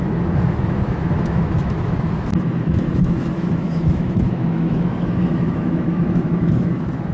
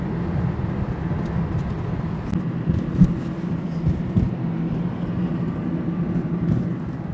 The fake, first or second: first